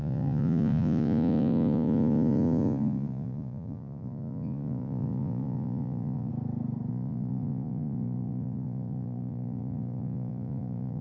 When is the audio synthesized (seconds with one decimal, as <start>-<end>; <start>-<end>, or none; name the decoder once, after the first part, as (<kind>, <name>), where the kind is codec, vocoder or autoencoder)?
0.0-6.3 (vocoder, Vocos); 6.9-11.0